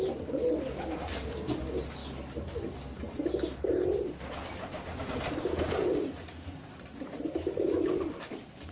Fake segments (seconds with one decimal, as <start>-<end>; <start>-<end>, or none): none